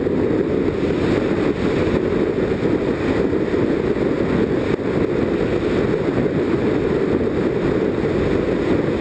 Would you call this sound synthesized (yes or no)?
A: no